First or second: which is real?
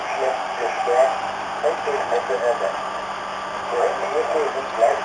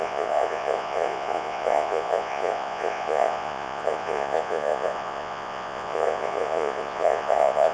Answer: first